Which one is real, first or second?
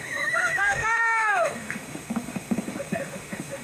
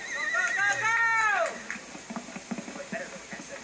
second